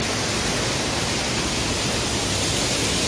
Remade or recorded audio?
recorded